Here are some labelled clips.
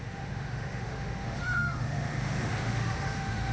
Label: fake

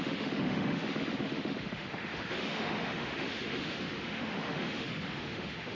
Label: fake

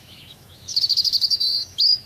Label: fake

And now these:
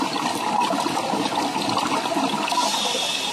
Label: real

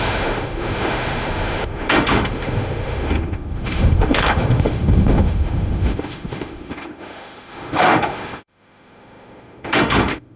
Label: fake